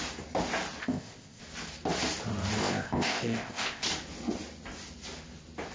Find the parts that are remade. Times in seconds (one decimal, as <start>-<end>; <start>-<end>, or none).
0.8-1.4; 2.6-3.9